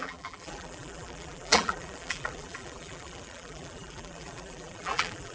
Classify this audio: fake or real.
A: fake